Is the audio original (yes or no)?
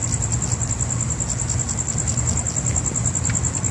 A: yes